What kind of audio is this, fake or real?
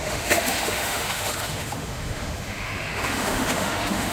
fake